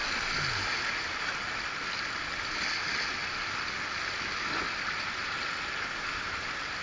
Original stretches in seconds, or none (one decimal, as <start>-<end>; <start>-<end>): 0.0-6.8